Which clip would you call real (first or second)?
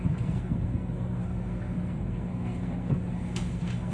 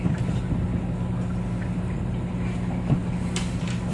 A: second